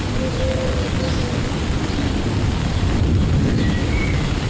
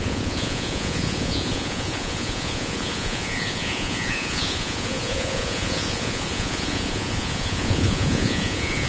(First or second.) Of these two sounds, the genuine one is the first